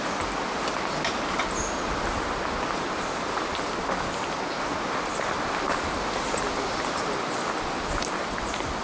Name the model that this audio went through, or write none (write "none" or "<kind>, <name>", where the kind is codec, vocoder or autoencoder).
none